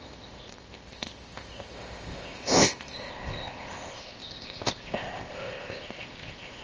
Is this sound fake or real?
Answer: fake